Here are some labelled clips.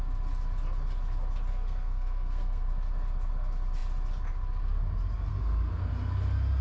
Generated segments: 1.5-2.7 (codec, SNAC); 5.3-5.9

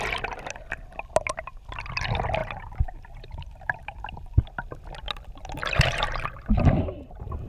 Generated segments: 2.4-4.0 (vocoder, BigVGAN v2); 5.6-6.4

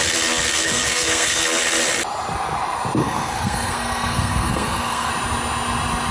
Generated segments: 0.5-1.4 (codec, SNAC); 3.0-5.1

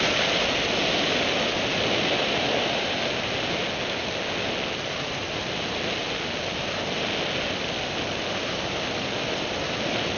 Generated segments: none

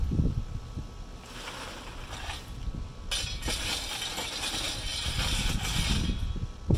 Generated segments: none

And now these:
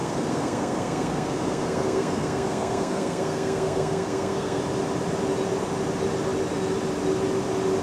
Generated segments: 0.0-4.6 (codec, SNAC)

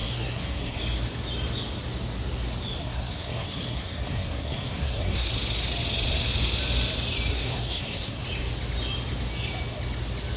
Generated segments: 0.0-0.8 (codec, SNAC); 2.8-5.3; 7.3-8.2

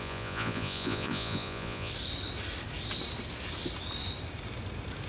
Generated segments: 0.0-1.9 (vocoder, Vocos)